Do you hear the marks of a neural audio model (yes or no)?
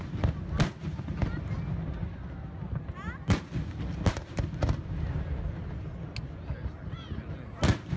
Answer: no